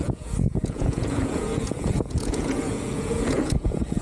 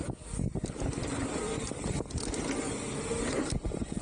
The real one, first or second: second